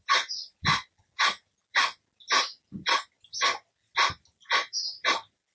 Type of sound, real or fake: real